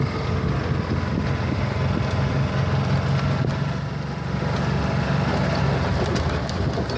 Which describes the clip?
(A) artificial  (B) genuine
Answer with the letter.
B